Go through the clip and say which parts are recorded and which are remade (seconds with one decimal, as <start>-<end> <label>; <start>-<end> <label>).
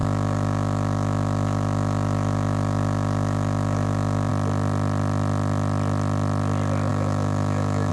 0.0-4.3 remade; 4.3-6.9 recorded; 6.9-7.9 remade